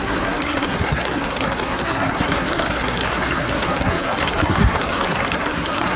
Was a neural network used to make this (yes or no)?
yes